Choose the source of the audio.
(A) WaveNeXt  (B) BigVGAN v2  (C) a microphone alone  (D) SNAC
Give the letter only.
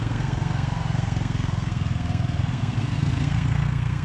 D